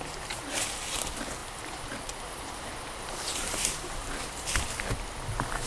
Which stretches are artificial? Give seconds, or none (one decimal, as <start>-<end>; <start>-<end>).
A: 1.4-4.8